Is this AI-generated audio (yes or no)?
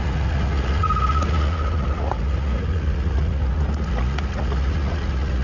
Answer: yes